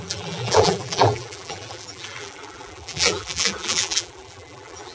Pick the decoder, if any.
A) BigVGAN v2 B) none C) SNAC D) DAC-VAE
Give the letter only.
A